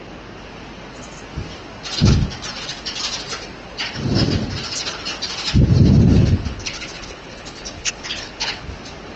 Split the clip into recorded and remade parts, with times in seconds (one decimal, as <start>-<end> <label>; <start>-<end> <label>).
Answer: 0.0-6.1 recorded; 6.1-8.7 remade; 8.7-9.2 recorded